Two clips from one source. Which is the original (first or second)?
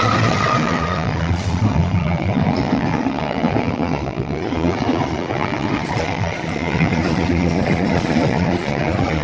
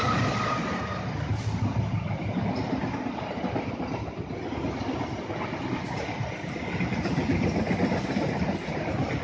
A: second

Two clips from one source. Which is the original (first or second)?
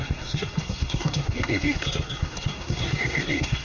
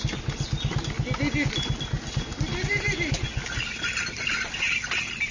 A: second